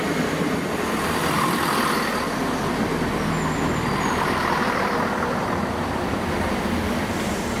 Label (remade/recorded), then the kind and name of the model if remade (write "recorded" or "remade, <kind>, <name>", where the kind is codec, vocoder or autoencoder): recorded